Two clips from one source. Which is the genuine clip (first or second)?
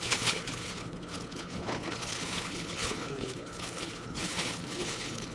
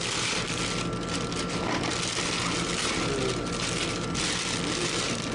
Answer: second